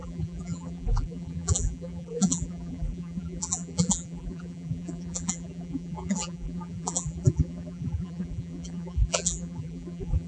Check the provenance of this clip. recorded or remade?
remade